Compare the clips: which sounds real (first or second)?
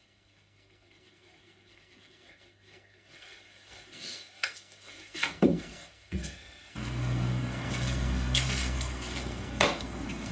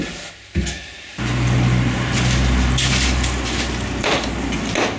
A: second